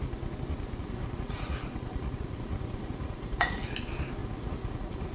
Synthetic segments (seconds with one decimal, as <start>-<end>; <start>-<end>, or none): 0.8-3.7; 4.2-5.1